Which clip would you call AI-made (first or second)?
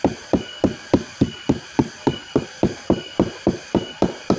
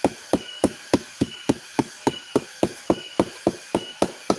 second